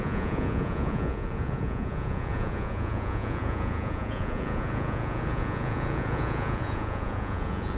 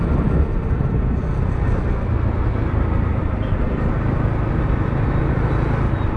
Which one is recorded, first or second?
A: second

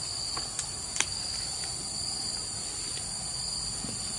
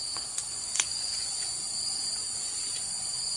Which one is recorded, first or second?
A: first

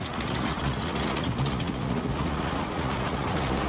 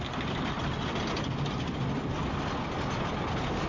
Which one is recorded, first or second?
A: second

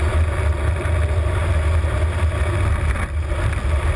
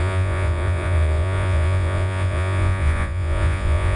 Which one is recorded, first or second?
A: first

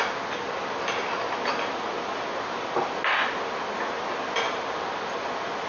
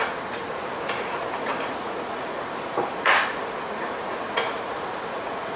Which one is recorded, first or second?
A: first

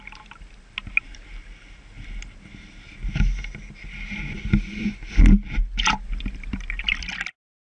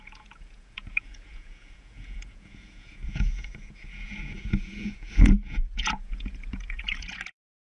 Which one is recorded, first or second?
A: first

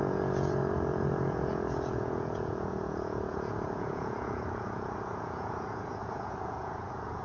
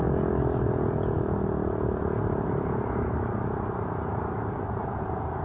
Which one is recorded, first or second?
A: second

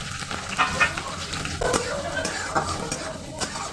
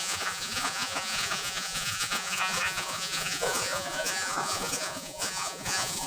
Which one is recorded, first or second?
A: first